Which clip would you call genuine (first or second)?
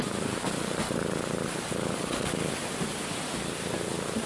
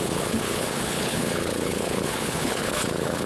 first